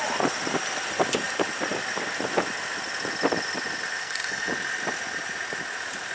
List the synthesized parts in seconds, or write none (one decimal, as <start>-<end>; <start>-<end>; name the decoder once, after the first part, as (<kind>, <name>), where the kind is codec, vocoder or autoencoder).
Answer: 4.0-4.5 (codec, SNAC)